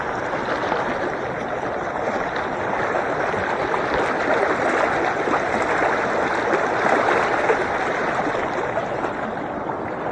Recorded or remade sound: recorded